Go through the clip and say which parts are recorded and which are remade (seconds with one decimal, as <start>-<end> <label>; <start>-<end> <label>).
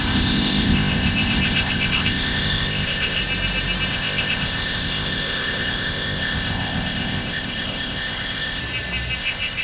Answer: 0.0-3.2 remade; 3.2-3.9 recorded; 3.9-8.6 remade; 8.6-9.2 recorded; 9.2-9.6 remade